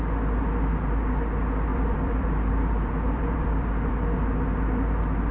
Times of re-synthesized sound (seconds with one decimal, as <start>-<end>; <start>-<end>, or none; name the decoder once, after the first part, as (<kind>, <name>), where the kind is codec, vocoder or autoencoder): 1.7-3.9 (vocoder, BigVGAN v2)